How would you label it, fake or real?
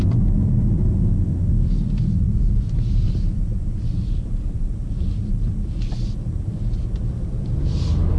real